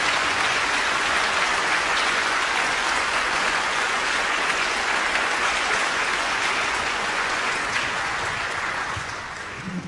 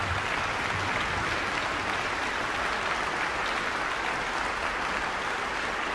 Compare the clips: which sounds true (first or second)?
second